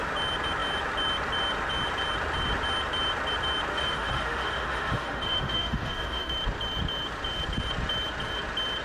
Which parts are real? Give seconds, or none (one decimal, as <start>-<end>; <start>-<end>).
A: 0.0-3.7; 6.3-8.8